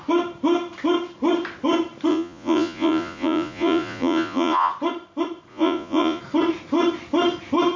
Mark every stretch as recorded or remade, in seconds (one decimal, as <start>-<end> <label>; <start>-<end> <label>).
0.0-2.1 recorded; 2.1-4.7 remade; 4.7-5.5 recorded; 5.5-6.2 remade; 6.2-7.8 recorded